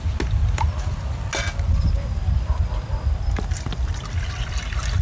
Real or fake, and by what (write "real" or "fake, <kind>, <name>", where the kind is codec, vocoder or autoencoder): real